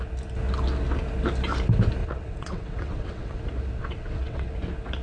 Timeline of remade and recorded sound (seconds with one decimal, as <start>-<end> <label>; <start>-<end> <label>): 0.0-2.0 recorded; 2.0-3.4 remade; 3.4-3.8 recorded; 3.8-4.5 remade; 4.5-5.0 recorded